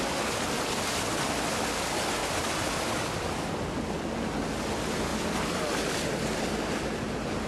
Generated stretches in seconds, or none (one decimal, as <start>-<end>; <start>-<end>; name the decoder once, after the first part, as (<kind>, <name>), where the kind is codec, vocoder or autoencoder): 2.2-3.1 (vocoder, BigVGAN v2); 5.1-5.9